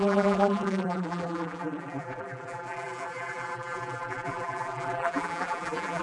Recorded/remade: remade